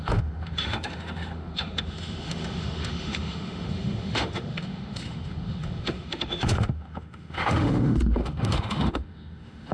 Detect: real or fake fake